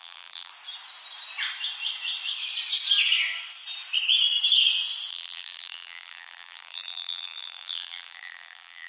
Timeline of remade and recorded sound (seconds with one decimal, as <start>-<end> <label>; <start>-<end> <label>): 0.0-0.5 remade; 0.5-5.1 recorded; 5.1-8.9 remade